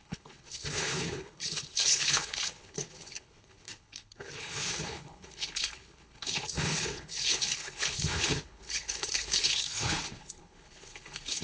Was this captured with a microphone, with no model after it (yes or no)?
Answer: no